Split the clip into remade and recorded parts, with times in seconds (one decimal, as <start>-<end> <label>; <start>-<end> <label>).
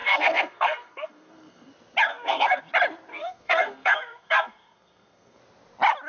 0.0-1.7 remade; 1.7-2.1 recorded; 2.1-2.6 remade; 2.6-3.1 recorded; 3.1-5.4 remade; 5.4-6.1 recorded